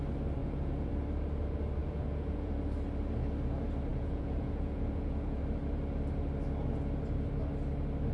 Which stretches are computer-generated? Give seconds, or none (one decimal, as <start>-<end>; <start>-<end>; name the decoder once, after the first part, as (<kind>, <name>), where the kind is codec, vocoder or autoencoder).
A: 0.4-0.9 (vocoder, Vocos); 1.8-2.5; 3.9-5.4

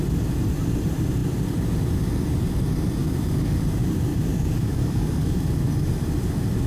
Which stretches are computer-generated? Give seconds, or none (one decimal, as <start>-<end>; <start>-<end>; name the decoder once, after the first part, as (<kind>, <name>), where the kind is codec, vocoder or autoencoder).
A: 3.0-3.6 (codec, DAC); 4.1-5.7

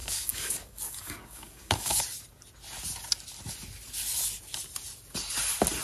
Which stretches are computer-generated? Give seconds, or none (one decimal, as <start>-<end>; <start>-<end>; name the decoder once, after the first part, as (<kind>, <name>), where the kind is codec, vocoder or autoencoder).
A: 0.0-2.0 (codec, DAC)

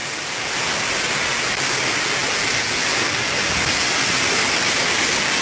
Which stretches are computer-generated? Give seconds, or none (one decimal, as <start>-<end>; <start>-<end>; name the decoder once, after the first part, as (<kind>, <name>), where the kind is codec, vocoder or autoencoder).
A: none

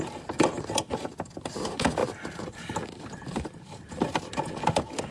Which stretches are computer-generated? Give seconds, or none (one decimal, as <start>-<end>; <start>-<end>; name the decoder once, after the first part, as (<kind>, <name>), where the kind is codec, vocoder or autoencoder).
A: none